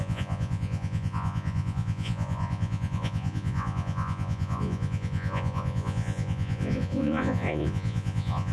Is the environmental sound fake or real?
fake